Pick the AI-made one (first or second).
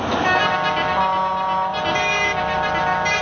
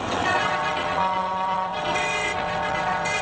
second